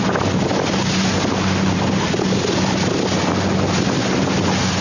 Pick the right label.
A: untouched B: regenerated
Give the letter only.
A